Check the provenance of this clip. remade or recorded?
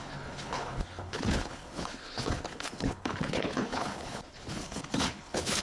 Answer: remade